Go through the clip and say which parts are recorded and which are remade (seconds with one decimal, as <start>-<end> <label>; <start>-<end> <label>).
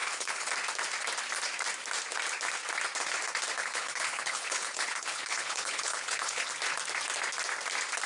0.0-0.5 remade; 0.5-3.6 recorded; 3.6-6.5 remade; 6.5-8.1 recorded